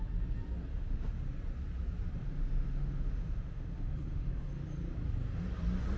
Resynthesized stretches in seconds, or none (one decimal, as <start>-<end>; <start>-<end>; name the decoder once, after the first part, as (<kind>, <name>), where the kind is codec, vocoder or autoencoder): 0.7-1.2 (autoencoder, DAC-VAE); 2.2-4.5